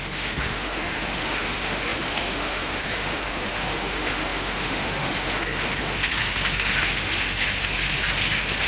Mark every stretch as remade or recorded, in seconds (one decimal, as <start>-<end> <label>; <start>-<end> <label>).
0.0-8.7 remade